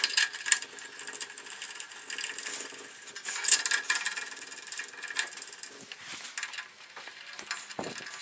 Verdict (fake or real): real